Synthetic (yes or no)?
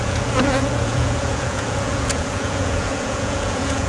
yes